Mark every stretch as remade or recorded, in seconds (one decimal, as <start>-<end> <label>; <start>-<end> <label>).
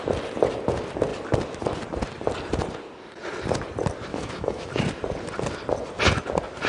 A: 0.0-4.1 recorded; 4.1-4.7 remade; 4.7-6.7 recorded